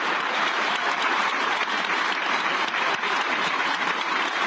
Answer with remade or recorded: remade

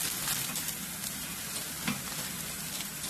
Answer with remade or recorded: recorded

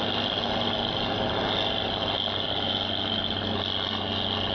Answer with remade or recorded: recorded